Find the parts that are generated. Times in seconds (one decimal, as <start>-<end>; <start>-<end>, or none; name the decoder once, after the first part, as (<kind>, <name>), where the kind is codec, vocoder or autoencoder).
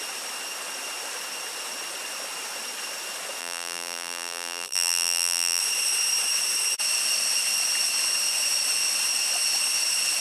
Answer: 3.4-5.6 (vocoder, BigVGAN v2)